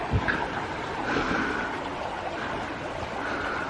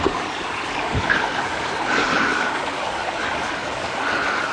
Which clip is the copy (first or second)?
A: second